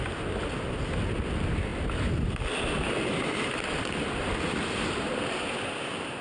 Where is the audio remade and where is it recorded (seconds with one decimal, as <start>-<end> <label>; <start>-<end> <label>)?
0.0-6.2 recorded